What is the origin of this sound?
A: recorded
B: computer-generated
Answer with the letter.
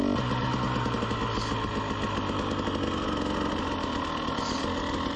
A